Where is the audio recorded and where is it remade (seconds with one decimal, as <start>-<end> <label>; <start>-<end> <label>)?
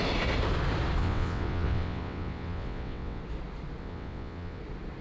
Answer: 0.0-1.0 recorded; 1.0-3.2 remade; 3.2-3.8 recorded; 3.8-4.6 remade; 4.6-5.0 recorded